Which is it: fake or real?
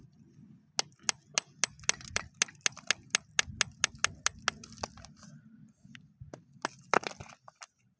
real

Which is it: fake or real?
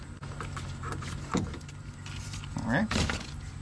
fake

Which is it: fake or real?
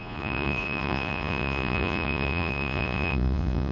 fake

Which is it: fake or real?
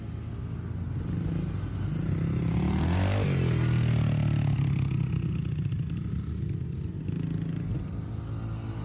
real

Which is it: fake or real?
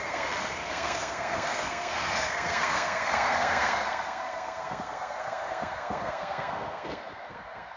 fake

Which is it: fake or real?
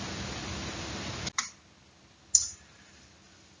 real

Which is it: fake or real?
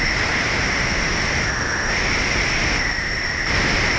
real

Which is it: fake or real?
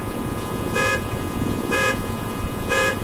fake